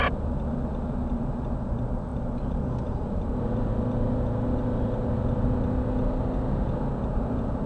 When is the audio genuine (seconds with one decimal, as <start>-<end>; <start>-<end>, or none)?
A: 0.0-7.7